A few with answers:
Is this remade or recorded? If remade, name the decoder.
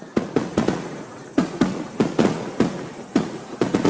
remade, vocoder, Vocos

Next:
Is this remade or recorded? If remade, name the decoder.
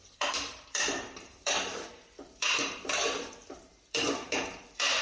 remade, vocoder, BigVGAN v2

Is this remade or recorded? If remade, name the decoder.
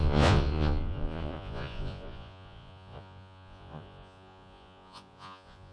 remade, vocoder, Vocos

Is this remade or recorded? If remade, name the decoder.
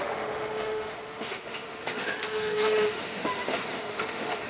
remade, autoencoder, DAC-VAE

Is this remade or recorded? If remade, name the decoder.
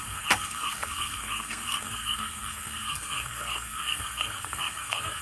remade, codec, SNAC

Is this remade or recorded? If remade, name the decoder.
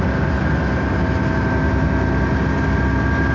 recorded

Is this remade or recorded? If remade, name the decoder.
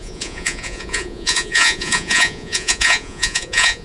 remade, vocoder, Vocos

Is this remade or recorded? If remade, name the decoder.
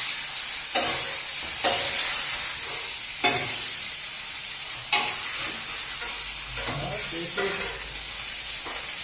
recorded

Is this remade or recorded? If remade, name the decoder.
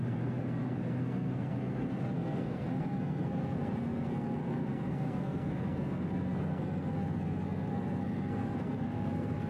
remade, codec, SNAC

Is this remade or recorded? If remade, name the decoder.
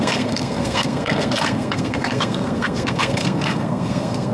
remade, codec, SNAC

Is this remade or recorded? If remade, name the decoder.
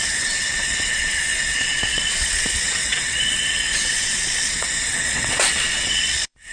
remade, vocoder, WaveNeXt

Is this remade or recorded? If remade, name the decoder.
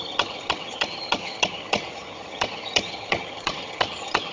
remade, vocoder, HiFi-GAN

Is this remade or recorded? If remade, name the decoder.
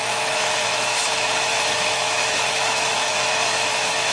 remade, autoencoder, DAC-VAE